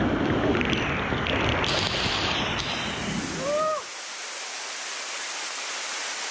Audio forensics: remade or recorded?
remade